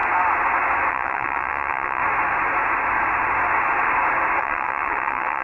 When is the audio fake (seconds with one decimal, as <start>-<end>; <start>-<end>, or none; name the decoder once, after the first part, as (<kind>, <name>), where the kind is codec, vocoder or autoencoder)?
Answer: 0.9-2.0 (vocoder, WaveNeXt); 4.4-5.4